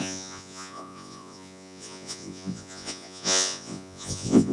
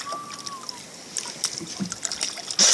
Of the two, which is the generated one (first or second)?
first